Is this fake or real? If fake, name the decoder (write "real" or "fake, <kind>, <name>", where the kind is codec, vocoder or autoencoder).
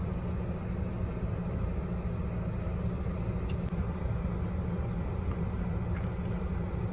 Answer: real